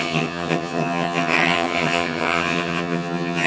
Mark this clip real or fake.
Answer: fake